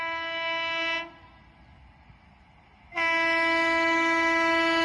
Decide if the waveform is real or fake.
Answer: real